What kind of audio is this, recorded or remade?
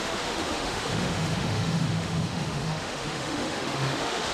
remade